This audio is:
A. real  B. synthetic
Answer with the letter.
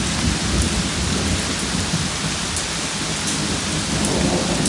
A